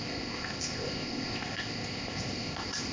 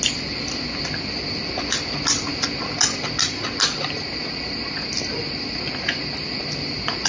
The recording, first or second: second